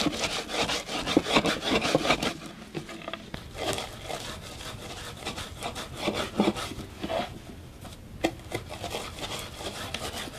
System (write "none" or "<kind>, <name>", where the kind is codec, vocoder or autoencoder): none